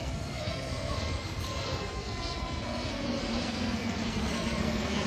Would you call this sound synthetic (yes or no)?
yes